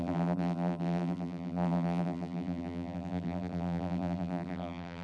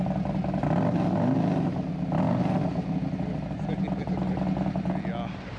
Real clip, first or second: second